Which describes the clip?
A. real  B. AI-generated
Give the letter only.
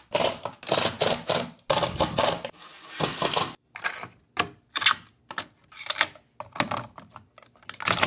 A